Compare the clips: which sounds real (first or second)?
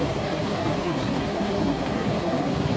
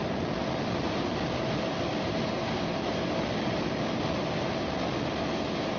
second